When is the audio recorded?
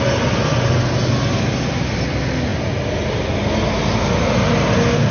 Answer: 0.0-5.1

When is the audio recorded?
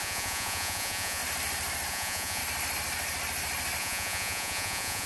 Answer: 1.2-1.9; 2.4-3.8